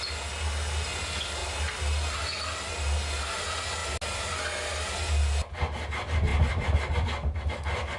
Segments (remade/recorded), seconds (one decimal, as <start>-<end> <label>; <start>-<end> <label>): 0.0-8.0 recorded